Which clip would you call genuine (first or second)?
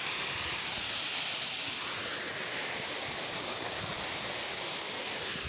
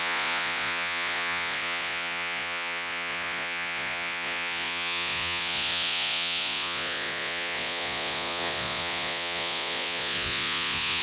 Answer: first